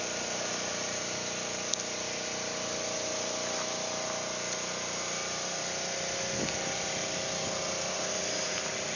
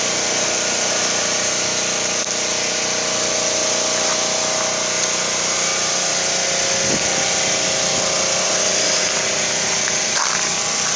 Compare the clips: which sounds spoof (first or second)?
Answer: first